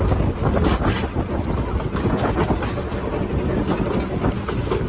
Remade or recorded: recorded